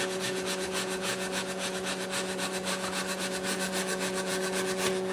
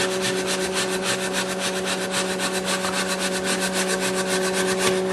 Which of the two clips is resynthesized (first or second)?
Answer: first